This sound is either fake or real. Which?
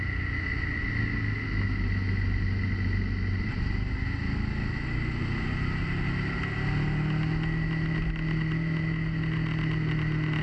real